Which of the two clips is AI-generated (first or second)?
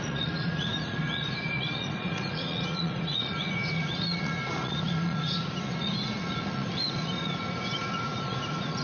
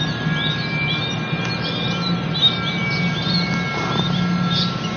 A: first